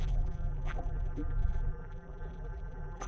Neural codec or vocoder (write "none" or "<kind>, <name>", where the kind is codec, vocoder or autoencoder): vocoder, BigVGAN v2